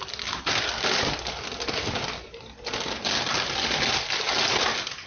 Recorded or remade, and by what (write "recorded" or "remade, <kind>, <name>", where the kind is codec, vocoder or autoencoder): recorded